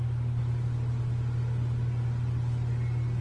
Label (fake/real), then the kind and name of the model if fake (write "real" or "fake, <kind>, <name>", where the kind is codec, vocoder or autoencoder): real